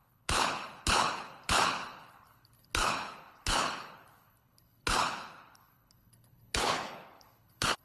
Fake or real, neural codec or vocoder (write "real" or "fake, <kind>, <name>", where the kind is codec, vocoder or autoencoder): fake, codec, HILCodec